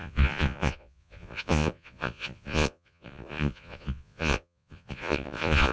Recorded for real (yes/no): no